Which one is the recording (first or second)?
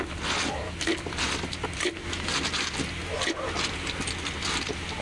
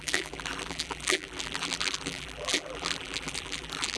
first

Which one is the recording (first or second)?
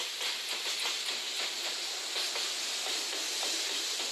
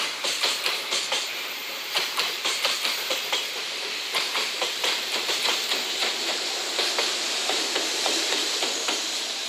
first